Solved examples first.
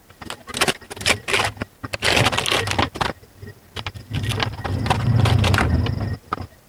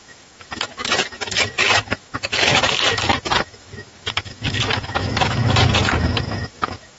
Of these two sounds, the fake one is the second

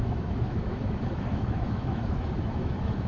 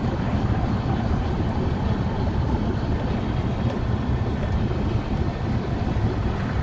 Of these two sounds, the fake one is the first